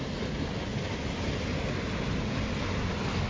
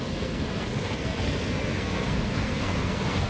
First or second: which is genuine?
first